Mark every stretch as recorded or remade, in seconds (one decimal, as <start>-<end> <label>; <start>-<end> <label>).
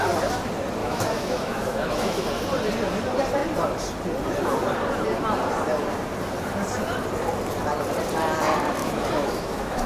0.0-0.8 recorded; 0.8-2.2 remade; 2.2-8.8 recorded; 8.8-9.9 remade